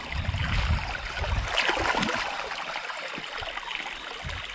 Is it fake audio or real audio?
real